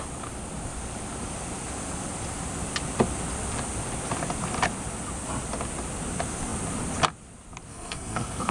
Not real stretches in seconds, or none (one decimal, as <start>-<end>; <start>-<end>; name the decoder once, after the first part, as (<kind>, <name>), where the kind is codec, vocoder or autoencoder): 7.7-8.5 (codec, SNAC)